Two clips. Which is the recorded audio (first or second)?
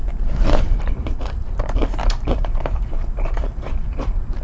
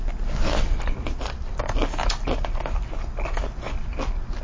second